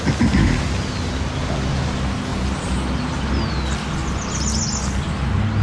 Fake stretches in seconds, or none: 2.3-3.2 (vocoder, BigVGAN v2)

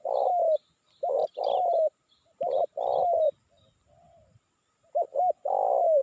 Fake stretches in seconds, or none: none

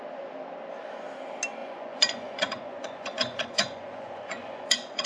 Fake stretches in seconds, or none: 1.6-5.1 (vocoder, Vocos)

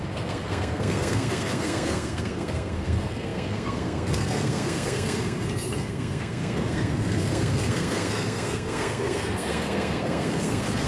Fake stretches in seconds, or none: 0.0-10.9 (codec, SNAC)

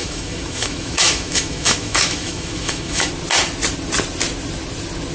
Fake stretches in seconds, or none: 0.0-3.1 (autoencoder, DAC-VAE)

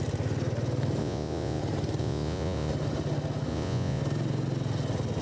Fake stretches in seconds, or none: 1.0-1.6 (vocoder, Vocos); 2.0-2.7; 3.5-4.0

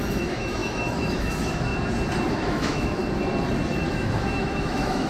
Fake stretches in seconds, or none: 0.0-1.7 (autoencoder, DAC-VAE); 2.3-3.0; 3.9-5.1